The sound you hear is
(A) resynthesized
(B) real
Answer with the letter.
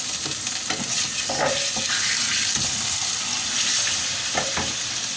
B